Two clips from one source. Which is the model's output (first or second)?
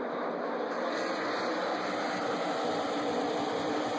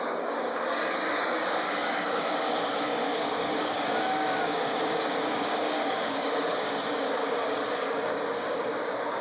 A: second